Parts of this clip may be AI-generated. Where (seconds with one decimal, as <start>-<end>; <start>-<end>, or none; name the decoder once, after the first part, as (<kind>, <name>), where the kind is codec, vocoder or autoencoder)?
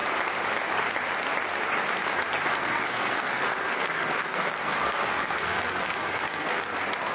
2.5-6.6 (codec, SNAC)